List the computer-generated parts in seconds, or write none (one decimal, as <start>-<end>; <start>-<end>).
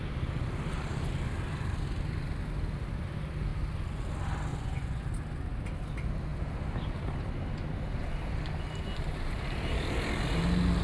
4.5-5.0